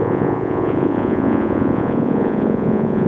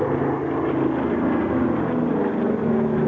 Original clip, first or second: second